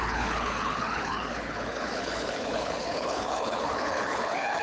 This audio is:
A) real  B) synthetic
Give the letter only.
B